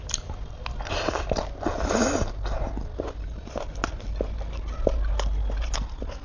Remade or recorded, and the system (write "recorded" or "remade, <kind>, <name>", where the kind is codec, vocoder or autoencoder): recorded